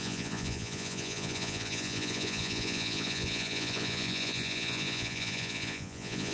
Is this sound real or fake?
fake